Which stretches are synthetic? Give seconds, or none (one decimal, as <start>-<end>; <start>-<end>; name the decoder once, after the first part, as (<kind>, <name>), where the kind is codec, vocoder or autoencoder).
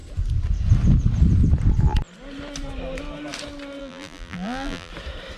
3.8-4.9 (vocoder, BigVGAN v2)